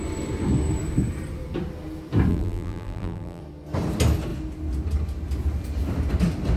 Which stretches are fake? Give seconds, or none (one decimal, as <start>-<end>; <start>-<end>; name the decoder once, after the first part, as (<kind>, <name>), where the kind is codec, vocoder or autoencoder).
2.3-3.4 (vocoder, BigVGAN v2)

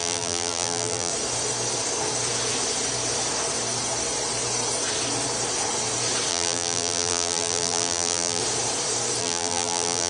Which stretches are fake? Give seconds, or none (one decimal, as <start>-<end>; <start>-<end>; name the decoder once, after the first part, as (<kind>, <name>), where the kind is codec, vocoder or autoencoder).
0.0-1.1 (vocoder, BigVGAN v2); 6.3-8.4; 9.2-10.1

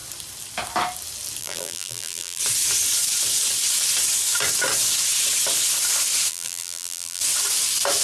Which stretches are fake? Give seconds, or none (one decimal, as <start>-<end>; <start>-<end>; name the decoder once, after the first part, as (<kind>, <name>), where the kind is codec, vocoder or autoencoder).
1.4-2.4 (vocoder, BigVGAN v2); 6.3-7.2

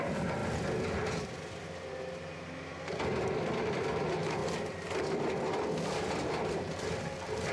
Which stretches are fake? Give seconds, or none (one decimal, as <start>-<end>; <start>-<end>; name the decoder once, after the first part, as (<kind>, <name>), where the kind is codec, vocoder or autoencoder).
none

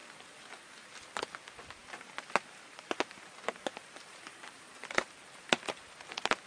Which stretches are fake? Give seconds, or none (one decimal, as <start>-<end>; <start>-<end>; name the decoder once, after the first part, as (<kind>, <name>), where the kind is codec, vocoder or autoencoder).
0.0-0.9 (vocoder, BigVGAN v2); 1.8-4.8

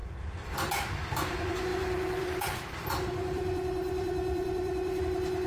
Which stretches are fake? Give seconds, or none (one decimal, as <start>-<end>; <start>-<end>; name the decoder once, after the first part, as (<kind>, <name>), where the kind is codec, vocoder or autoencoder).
1.7-5.0 (vocoder, BigVGAN v2)

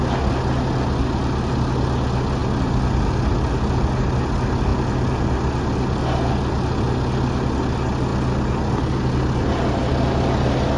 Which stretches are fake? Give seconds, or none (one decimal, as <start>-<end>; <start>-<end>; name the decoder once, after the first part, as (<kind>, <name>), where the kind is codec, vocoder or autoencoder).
none